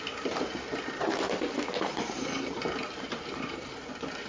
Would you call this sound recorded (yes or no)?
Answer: no